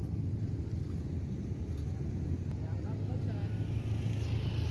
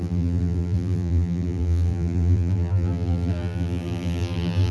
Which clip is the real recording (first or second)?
first